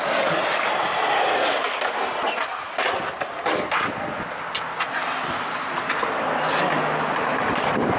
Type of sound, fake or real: real